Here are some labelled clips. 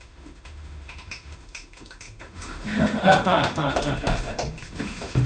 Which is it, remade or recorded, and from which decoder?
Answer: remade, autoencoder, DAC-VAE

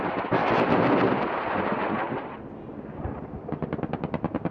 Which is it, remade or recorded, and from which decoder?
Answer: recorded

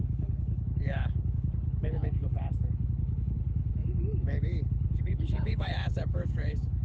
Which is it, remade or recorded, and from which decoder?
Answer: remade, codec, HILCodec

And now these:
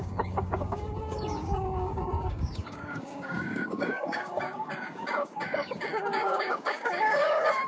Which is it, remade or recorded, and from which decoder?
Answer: remade, codec, DAC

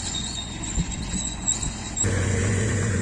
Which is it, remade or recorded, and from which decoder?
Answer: remade, vocoder, Vocos